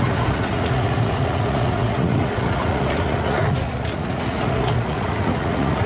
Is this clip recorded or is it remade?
remade